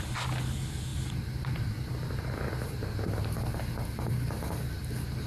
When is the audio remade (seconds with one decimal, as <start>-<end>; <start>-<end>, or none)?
none